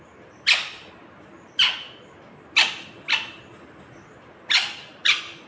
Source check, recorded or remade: recorded